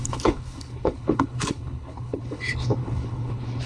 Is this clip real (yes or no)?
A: no